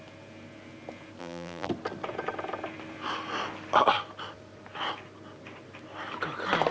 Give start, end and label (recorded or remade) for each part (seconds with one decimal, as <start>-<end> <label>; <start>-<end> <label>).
0.0-1.2 recorded; 1.2-1.7 remade; 1.7-6.7 recorded